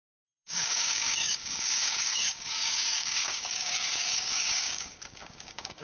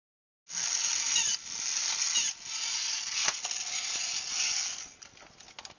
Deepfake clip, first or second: first